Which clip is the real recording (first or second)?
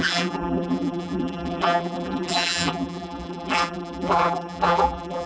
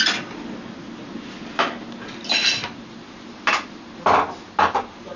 second